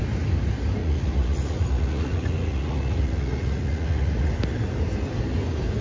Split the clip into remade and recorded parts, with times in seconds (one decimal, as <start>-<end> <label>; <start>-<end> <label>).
0.0-0.8 recorded; 0.8-4.3 remade; 4.3-5.8 recorded